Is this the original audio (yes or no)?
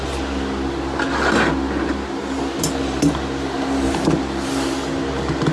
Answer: yes